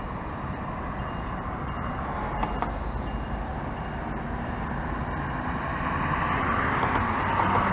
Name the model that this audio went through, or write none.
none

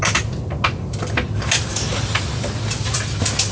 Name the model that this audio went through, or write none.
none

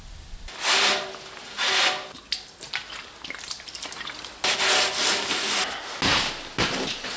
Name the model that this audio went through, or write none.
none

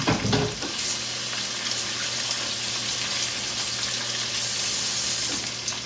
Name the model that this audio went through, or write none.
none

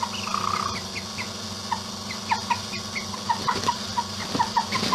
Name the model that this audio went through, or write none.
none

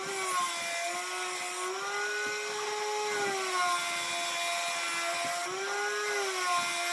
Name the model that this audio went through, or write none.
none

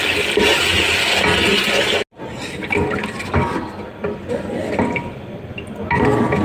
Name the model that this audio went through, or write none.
none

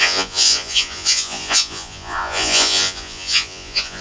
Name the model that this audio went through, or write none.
vocoder, Vocos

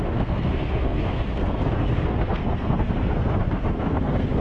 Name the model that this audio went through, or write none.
codec, SNAC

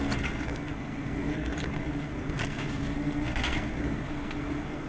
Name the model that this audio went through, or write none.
codec, SNAC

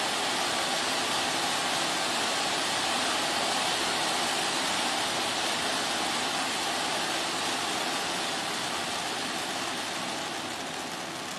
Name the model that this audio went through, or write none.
none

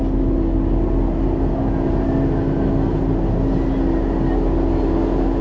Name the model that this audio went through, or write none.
none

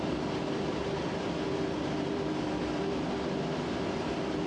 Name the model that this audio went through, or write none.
vocoder, BigVGAN v2